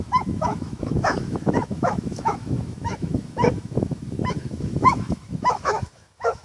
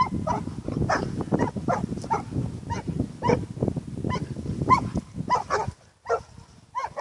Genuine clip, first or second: second